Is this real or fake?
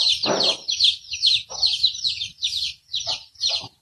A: real